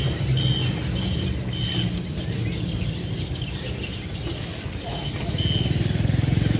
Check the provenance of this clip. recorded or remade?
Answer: recorded